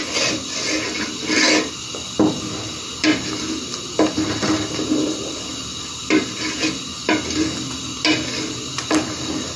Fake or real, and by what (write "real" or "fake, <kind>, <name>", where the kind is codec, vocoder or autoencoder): real